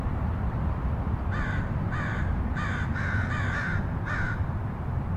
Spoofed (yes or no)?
yes